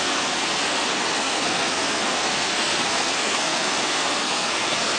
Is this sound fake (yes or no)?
yes